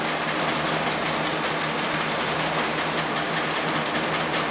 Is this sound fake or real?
real